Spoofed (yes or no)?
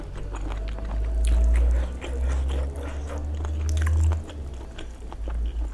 no